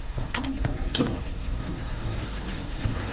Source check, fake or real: fake